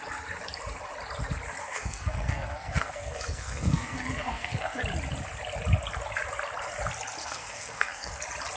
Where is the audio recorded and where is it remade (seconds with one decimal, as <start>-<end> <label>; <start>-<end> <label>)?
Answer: 0.0-1.6 recorded; 1.6-4.8 remade; 4.8-7.2 recorded; 7.2-8.1 remade; 8.1-8.6 recorded